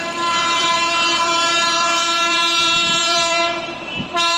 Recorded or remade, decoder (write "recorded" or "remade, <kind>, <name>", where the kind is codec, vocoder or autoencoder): remade, vocoder, BigVGAN v2